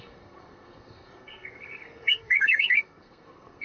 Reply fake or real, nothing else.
fake